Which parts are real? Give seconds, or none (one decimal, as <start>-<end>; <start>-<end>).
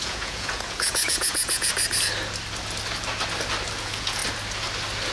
1.7-3.8; 4.2-5.1